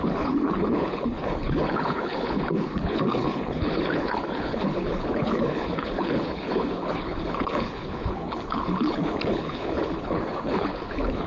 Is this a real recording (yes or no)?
no